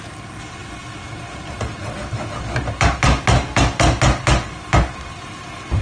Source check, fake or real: real